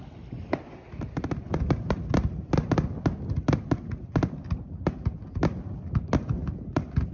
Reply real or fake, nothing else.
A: real